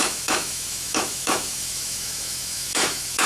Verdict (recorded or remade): remade